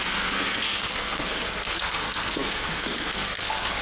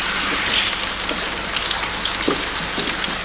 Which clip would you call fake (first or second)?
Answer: first